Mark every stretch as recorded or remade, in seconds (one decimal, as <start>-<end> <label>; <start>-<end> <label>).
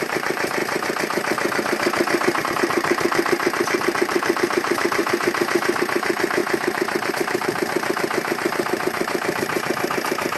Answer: 0.0-0.6 remade; 0.6-2.4 recorded; 2.4-5.0 remade; 5.0-5.8 recorded; 5.8-10.4 remade